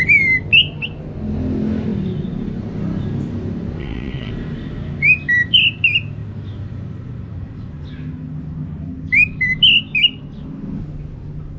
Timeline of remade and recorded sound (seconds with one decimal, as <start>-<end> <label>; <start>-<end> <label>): 0.0-3.8 recorded; 3.8-4.3 remade; 4.3-11.6 recorded